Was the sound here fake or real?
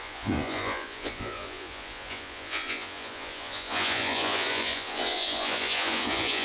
fake